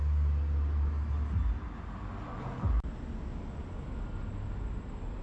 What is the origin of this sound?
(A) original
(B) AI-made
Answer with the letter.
A